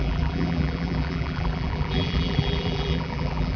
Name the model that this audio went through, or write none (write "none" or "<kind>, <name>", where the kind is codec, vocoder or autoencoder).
vocoder, BigVGAN v2